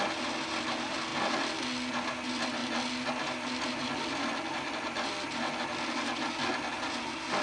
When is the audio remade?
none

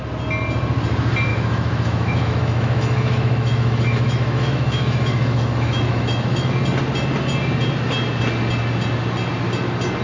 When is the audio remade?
1.3-6.5 (autoencoder, DAC-VAE)